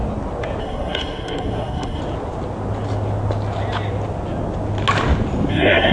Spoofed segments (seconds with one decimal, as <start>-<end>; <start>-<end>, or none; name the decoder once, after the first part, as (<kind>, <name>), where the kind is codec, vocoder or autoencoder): 0.6-2.0 (codec, SNAC); 5.5-5.9